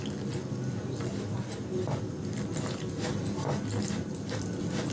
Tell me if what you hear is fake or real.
real